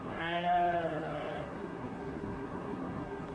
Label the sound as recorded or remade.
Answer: remade